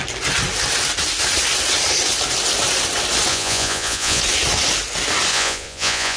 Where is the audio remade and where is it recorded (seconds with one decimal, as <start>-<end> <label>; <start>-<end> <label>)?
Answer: 0.0-3.3 recorded; 3.3-4.2 remade; 4.2-5.3 recorded; 5.3-6.2 remade